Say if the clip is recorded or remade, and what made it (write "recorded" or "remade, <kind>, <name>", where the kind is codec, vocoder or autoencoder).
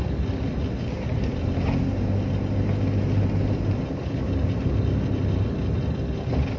recorded